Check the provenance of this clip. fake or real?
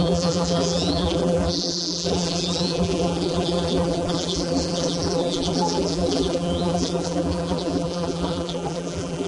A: fake